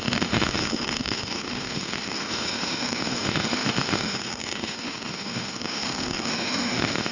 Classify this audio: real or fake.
fake